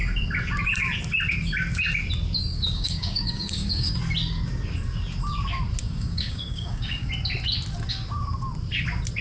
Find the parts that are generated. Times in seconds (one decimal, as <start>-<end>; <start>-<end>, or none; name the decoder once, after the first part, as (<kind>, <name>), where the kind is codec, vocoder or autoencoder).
2.5-4.0 (codec, DAC); 5.8-7.1